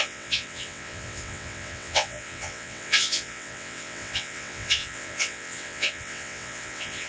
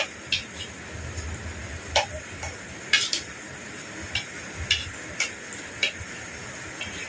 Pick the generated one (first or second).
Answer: first